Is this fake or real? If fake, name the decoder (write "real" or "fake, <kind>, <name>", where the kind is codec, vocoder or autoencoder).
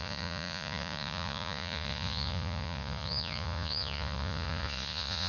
fake, vocoder, Vocos